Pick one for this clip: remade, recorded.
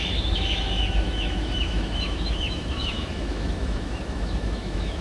remade